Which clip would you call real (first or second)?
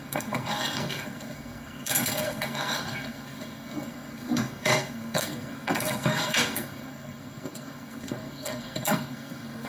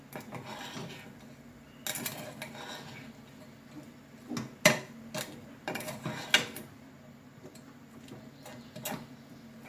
second